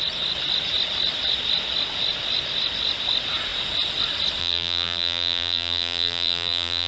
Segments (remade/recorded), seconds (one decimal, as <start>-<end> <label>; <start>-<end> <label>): 0.0-4.4 recorded; 4.4-6.9 remade